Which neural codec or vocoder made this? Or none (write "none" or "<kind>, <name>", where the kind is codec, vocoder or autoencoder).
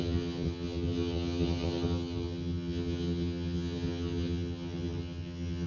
vocoder, HiFi-GAN